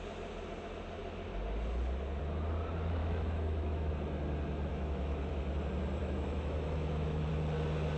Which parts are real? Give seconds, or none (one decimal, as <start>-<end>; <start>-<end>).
0.0-3.0; 3.9-4.7; 5.3-6.0; 7.3-8.0